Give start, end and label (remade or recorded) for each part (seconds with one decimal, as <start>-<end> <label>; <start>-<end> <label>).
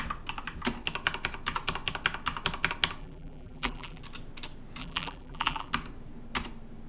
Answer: 0.0-3.0 recorded; 3.0-4.0 remade; 4.0-4.8 recorded; 4.8-5.7 remade; 5.7-6.9 recorded